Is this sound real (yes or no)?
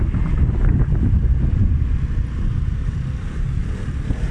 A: yes